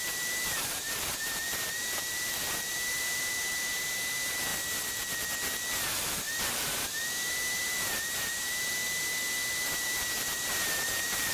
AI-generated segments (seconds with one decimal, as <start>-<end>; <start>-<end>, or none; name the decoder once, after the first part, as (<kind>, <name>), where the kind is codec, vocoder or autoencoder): 0.0-4.5 (vocoder, BigVGAN v2); 6.4-8.8; 9.5-11.3